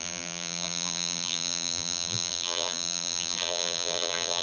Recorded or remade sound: remade